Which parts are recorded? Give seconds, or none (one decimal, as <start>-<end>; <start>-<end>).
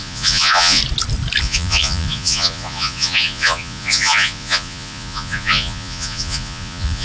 0.8-1.4